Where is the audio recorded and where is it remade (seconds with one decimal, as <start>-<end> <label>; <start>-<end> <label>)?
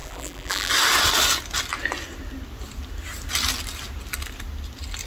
0.0-0.7 remade; 0.7-5.1 recorded